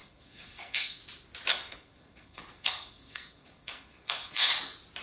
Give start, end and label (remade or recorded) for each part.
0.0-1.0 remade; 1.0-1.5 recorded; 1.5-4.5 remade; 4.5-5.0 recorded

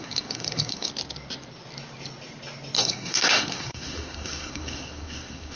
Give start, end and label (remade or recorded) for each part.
0.0-0.9 remade; 0.9-2.8 recorded; 2.8-5.6 remade

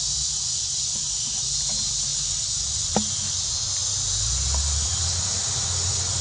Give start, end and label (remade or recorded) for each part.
0.0-6.2 recorded